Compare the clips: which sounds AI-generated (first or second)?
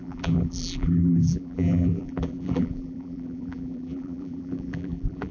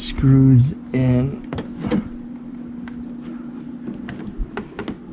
first